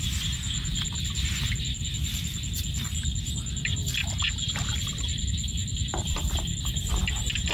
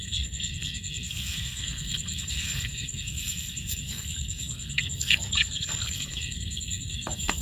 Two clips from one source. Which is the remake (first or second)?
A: second